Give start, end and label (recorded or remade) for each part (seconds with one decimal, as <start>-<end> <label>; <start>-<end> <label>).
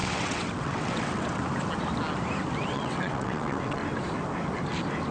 0.0-1.4 remade; 1.4-2.7 recorded; 2.7-3.8 remade; 3.8-5.1 recorded